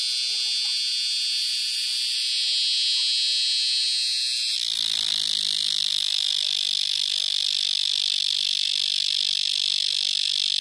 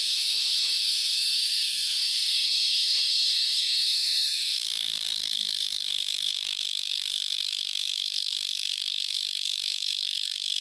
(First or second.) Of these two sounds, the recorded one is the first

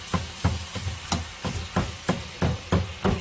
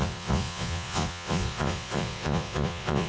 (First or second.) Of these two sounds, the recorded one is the first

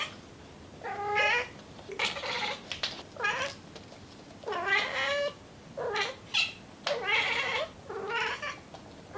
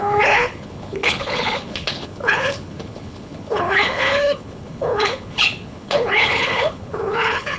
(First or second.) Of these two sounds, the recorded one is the first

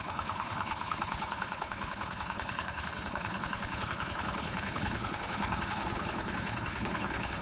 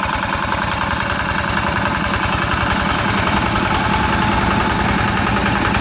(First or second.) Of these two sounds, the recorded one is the second